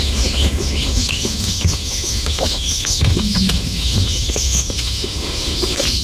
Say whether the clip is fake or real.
fake